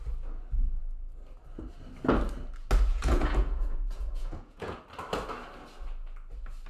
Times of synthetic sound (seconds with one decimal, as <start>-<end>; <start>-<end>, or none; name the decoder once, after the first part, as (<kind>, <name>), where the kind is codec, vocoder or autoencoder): 2.9-4.8 (vocoder, Vocos)